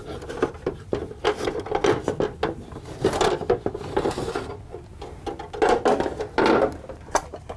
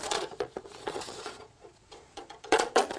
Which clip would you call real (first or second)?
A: first